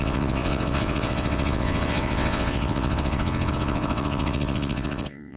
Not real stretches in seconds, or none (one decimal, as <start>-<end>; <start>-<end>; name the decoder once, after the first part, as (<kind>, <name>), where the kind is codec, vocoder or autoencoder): 0.0-5.4 (vocoder, WaveNeXt)